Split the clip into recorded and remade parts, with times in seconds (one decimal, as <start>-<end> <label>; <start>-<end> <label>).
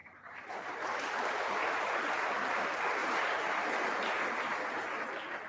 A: 0.0-2.6 remade; 2.6-3.0 recorded; 3.0-3.7 remade; 3.7-5.5 recorded